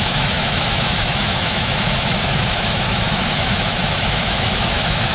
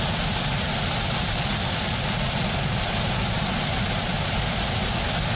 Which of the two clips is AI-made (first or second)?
first